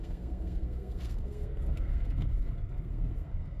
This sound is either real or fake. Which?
fake